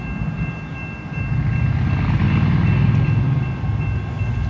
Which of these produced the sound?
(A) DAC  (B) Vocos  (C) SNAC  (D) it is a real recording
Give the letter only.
D